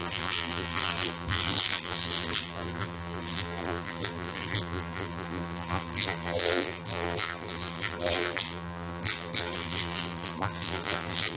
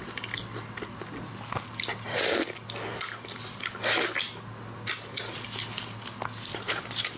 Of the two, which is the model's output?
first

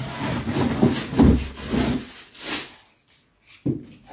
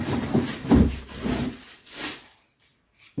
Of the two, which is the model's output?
second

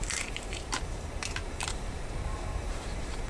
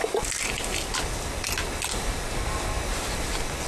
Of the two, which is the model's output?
first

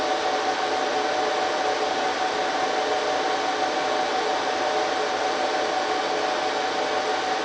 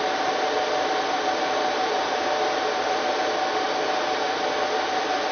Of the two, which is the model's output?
second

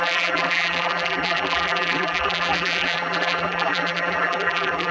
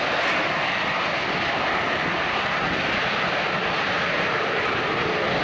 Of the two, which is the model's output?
first